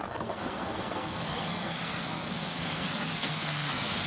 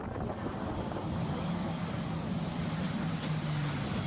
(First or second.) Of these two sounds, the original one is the second